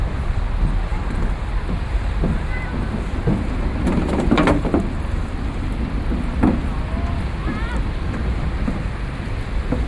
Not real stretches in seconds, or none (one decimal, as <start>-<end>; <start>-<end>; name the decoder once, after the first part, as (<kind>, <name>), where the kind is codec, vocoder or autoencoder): none